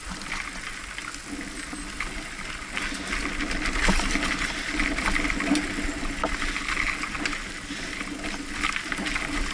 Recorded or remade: recorded